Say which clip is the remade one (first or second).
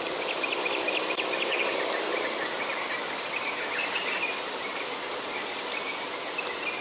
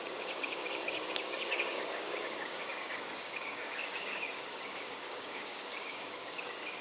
second